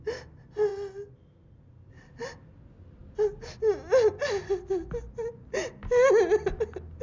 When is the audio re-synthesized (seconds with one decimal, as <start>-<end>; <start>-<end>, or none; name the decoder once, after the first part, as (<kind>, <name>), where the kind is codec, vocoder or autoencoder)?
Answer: none